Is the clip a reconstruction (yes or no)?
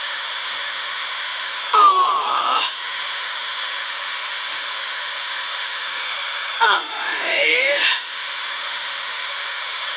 yes